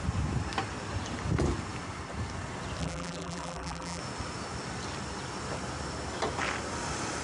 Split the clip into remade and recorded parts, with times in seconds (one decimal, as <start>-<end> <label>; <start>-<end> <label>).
0.0-2.8 recorded; 2.8-4.0 remade; 4.0-7.2 recorded